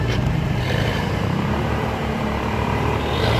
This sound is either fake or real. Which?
fake